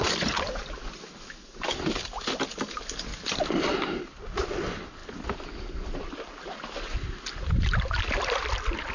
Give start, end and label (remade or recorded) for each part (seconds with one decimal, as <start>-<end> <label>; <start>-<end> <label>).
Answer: 0.0-8.9 recorded

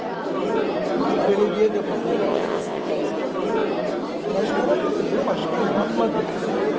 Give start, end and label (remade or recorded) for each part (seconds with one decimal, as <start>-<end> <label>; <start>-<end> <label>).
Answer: 0.0-2.3 recorded; 2.3-2.9 remade; 2.9-6.8 recorded

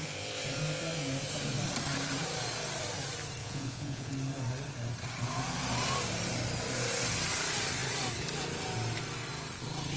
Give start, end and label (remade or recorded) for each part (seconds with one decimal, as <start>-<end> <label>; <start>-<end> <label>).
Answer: 0.0-3.4 recorded; 3.4-4.1 remade; 4.1-10.0 recorded

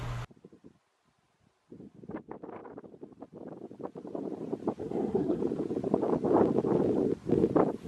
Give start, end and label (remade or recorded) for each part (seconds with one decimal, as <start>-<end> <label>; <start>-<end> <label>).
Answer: 0.0-4.8 recorded; 4.8-5.4 remade; 5.4-7.9 recorded

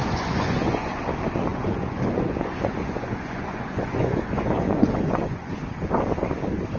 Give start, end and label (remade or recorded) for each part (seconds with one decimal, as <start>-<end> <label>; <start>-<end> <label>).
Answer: 0.0-1.0 remade; 1.0-1.5 recorded; 1.5-5.6 remade; 5.6-6.8 recorded

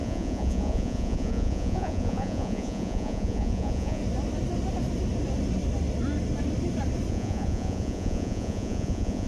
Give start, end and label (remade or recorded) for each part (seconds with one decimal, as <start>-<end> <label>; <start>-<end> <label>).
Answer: 0.0-4.0 remade; 4.0-7.1 recorded; 7.1-9.3 remade

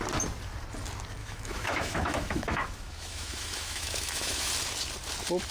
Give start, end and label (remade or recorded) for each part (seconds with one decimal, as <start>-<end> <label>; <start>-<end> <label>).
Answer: 0.0-1.2 recorded; 1.2-4.5 remade; 4.5-5.5 recorded

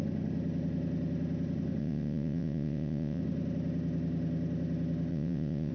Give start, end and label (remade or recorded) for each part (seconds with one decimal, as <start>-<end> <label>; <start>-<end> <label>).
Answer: 0.0-1.8 recorded; 1.8-3.2 remade; 3.2-5.1 recorded; 5.1-5.7 remade